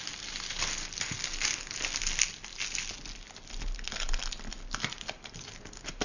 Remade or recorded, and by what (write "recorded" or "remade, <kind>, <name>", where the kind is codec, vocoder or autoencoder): recorded